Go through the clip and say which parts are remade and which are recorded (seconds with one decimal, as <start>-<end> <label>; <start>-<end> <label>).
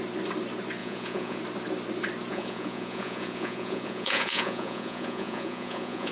0.0-0.8 recorded; 0.8-1.4 remade; 1.4-2.3 recorded; 2.3-6.1 remade